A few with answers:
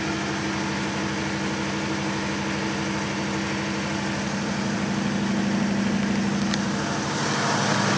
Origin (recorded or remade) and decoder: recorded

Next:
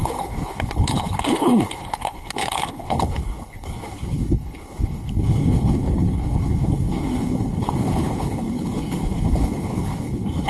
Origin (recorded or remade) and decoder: remade, codec, HILCodec